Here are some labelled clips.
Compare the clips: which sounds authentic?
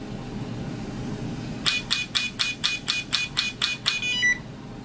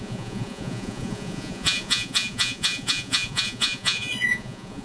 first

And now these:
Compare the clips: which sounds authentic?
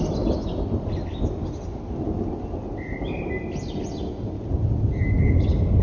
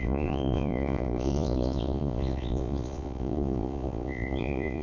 first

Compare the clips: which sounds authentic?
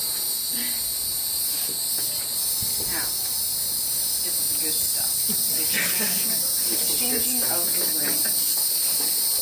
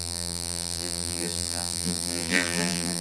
first